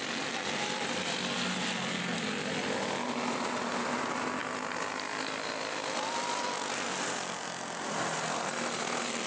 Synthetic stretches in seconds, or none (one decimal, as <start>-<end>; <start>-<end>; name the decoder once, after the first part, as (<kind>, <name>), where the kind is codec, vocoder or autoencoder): none